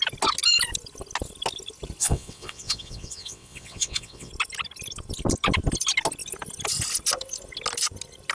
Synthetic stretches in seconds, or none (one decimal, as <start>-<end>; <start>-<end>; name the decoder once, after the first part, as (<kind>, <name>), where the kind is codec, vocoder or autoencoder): 2.0-4.3 (vocoder, WaveNeXt)